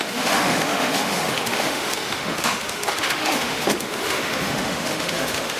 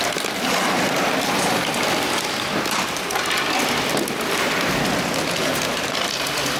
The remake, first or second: first